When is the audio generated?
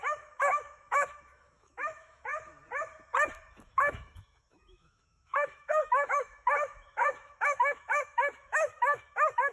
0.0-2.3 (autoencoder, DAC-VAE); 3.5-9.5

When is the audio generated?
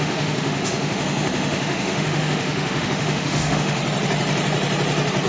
0.0-3.8 (autoencoder, DAC-VAE)